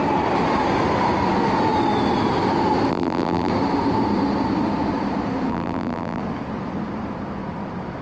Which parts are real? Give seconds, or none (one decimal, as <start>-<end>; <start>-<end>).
0.0-2.9; 3.5-5.5; 6.2-8.0